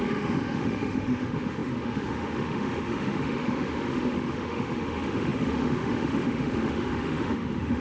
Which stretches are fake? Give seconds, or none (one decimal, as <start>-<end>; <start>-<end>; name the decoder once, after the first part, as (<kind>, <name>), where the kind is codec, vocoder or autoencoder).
0.0-7.8 (autoencoder, DAC-VAE)